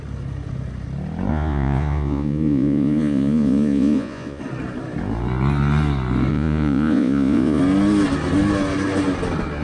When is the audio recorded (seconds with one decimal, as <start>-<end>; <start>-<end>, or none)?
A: 0.0-1.3; 4.4-6.3; 7.6-9.6